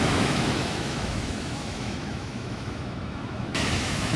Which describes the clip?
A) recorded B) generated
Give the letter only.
B